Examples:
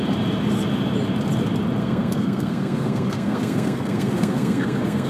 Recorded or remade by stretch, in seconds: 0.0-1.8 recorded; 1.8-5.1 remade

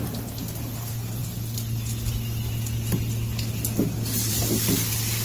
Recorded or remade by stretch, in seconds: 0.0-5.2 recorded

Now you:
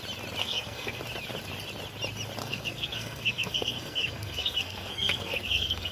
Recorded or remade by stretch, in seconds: 0.0-0.4 recorded; 0.4-1.0 remade; 1.0-2.4 recorded; 2.4-5.9 remade